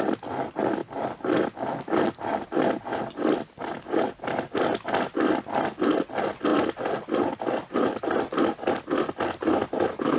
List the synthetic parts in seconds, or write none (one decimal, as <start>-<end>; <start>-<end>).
none